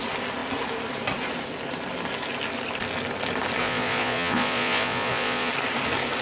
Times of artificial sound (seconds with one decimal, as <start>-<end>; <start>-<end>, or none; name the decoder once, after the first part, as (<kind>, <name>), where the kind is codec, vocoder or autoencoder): 3.6-5.5 (vocoder, Vocos)